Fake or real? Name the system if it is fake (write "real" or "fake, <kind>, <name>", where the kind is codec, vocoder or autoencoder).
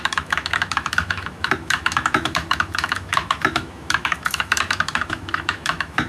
fake, autoencoder, DAC-VAE